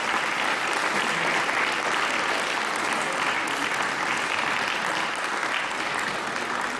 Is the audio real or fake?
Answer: real